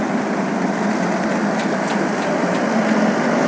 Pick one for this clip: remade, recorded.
recorded